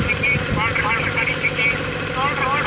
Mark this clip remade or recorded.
recorded